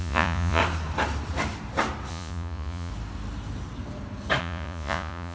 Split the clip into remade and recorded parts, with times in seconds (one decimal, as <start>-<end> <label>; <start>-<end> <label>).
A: 0.0-0.6 remade; 0.6-2.1 recorded; 2.1-2.9 remade; 2.9-4.4 recorded; 4.4-5.3 remade